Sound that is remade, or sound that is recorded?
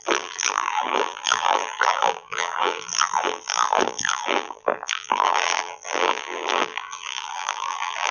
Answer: remade